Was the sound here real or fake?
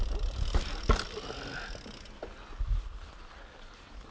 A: real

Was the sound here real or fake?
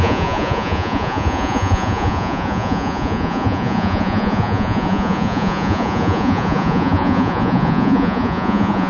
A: fake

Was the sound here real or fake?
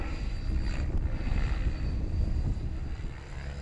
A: real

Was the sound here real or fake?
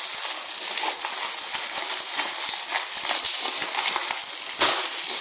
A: real